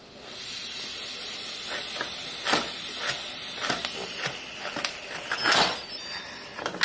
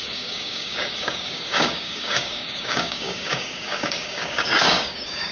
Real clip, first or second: first